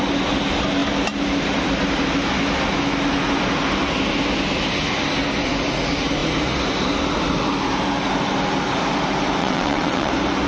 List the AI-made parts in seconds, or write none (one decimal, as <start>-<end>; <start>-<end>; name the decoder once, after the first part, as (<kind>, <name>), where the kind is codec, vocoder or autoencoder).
9.4-10.1 (vocoder, WaveNeXt)